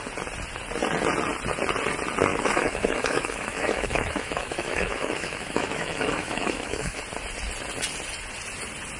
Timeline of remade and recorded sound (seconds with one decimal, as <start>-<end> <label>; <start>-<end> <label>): 0.0-2.3 recorded; 2.3-7.0 remade; 7.0-9.0 recorded